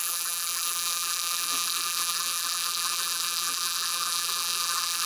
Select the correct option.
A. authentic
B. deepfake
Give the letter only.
B